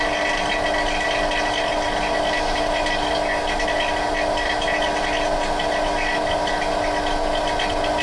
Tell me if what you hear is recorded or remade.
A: recorded